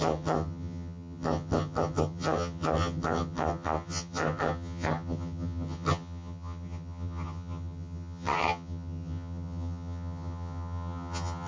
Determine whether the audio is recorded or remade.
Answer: remade